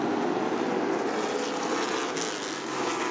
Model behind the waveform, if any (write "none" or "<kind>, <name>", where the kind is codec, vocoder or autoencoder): none